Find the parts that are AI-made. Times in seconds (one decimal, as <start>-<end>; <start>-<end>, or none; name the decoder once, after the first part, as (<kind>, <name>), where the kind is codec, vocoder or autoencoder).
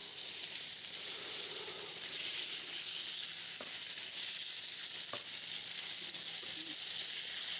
0.0-2.6 (vocoder, BigVGAN v2)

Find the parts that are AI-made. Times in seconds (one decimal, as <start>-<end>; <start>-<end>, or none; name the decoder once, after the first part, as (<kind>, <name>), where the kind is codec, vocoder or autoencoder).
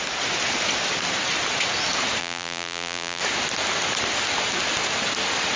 2.2-3.2 (vocoder, BigVGAN v2)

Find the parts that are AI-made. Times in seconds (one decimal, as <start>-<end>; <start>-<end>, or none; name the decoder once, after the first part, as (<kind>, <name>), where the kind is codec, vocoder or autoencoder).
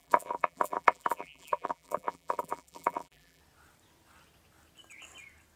0.0-3.4 (vocoder, BigVGAN v2)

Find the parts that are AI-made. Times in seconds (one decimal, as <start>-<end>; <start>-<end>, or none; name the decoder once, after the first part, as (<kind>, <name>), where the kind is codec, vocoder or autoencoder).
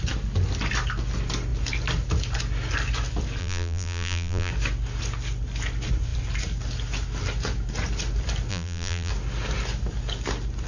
3.4-4.5 (vocoder, BigVGAN v2); 8.5-9.1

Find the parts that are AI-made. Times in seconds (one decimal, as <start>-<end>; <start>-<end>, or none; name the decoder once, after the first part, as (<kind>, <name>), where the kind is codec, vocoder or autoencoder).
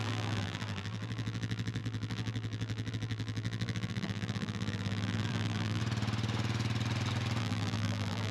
0.0-5.8 (vocoder, BigVGAN v2); 7.4-8.3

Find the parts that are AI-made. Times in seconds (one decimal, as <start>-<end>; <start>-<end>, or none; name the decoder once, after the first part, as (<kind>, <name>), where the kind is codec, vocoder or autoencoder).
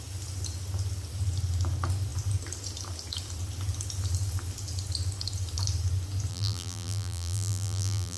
6.3-8.2 (vocoder, BigVGAN v2)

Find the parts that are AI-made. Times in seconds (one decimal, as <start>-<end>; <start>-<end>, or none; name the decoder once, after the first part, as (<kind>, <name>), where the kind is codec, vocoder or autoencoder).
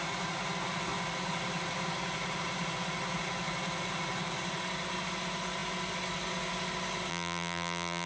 7.1-8.1 (vocoder, BigVGAN v2)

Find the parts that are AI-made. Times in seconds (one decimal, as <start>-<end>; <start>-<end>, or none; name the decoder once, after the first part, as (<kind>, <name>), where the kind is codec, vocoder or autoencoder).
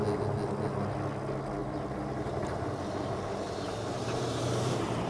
1.6-5.1 (vocoder, BigVGAN v2)